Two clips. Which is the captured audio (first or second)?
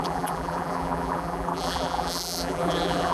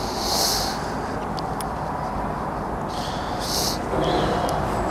second